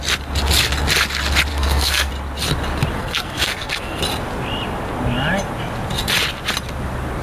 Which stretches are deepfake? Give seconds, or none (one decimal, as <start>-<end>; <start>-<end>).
1.5-2.1; 3.0-4.0